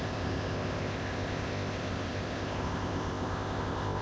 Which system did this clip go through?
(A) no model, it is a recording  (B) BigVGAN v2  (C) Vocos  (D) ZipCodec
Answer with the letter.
D